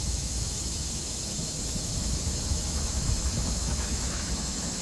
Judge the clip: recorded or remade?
remade